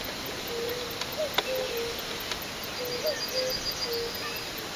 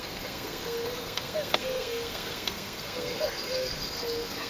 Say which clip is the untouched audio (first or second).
first